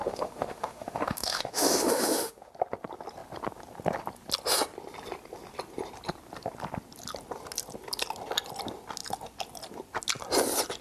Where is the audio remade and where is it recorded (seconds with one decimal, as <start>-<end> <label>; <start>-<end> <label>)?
0.0-2.5 remade; 2.5-10.8 recorded